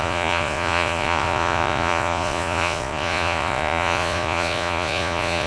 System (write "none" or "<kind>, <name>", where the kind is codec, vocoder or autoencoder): vocoder, Vocos